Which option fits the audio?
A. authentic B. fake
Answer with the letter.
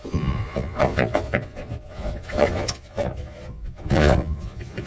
B